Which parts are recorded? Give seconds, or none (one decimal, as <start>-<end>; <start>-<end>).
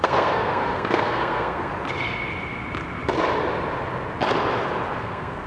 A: 1.7-5.0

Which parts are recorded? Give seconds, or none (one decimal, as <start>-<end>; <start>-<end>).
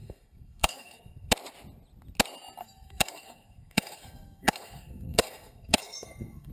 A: 1.3-2.6